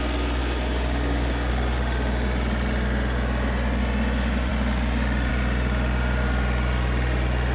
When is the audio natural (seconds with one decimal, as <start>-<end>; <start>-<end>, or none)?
0.0-0.4; 1.5-7.5

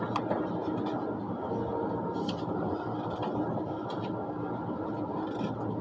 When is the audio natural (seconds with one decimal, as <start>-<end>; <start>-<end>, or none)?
0.0-5.8

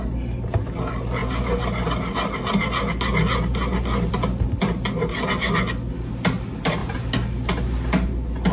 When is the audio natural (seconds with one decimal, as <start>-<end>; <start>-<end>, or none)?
0.0-8.5

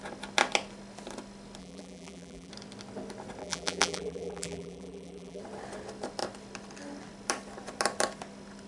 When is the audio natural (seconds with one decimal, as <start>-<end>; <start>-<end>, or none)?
0.0-1.6; 2.5-3.4; 5.4-8.7

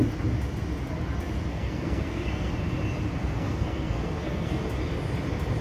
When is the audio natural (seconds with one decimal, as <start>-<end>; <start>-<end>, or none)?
0.0-1.5; 2.5-3.2; 4.6-5.6

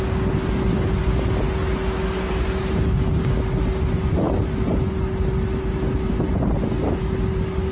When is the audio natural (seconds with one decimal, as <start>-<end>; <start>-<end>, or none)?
0.0-7.7

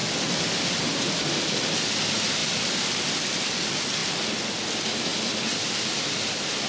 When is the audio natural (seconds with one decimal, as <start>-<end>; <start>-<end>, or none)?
1.3-2.4; 3.4-6.7